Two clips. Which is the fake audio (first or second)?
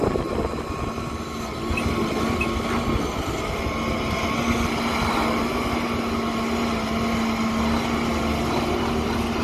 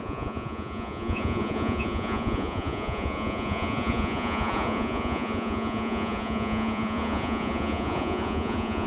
second